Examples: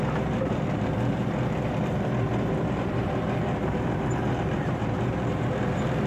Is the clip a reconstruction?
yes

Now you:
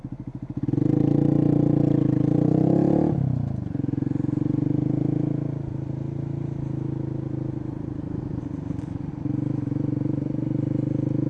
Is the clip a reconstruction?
no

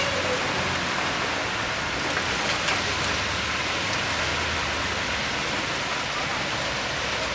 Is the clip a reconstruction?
no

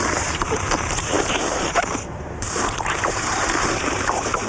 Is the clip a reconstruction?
yes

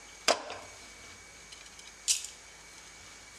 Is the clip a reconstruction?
no